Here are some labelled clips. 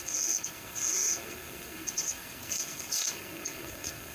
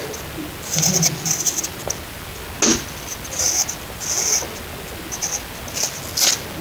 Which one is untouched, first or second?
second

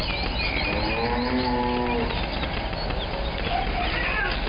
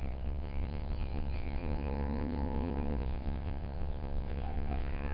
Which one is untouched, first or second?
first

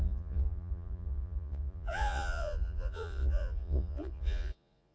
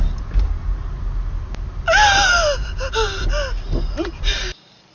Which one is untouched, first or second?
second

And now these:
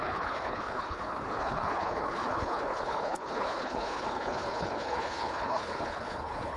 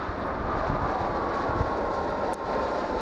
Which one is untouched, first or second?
second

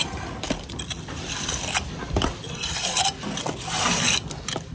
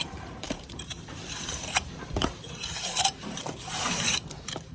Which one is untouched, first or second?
first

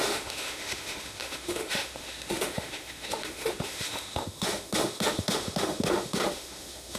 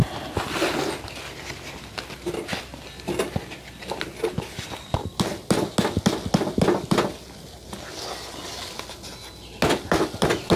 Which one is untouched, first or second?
second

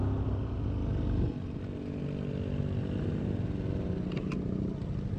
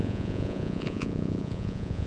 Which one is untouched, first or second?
first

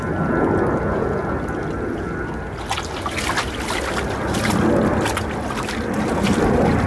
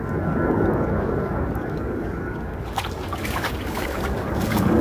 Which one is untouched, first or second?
first